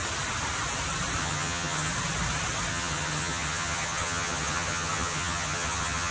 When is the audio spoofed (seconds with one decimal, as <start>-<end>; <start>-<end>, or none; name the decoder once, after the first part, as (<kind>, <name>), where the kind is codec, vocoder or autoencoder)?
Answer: 1.2-1.9 (vocoder, HiFi-GAN); 2.7-6.1